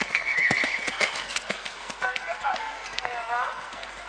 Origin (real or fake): fake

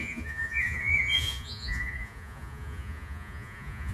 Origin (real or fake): fake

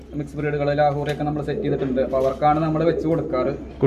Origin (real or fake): real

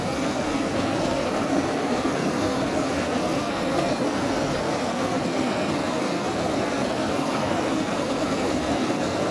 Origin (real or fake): fake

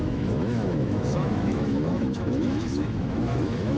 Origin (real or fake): fake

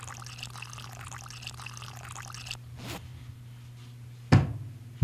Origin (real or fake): real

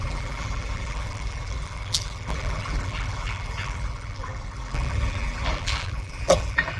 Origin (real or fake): fake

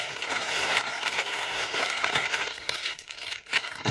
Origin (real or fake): fake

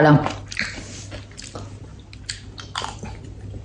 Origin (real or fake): real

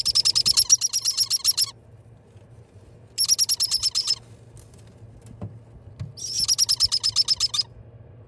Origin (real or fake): real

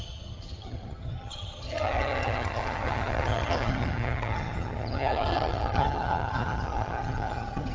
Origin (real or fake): fake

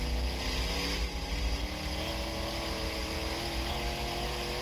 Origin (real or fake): real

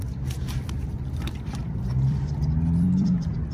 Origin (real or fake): fake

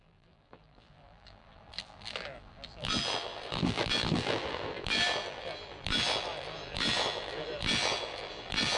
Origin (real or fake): fake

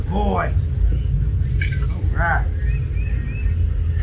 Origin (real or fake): real